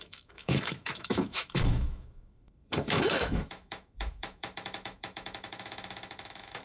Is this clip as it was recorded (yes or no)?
no